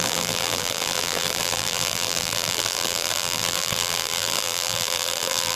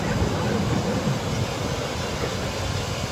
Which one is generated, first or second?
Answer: first